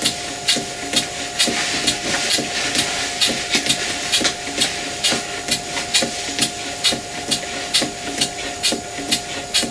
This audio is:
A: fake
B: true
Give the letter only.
B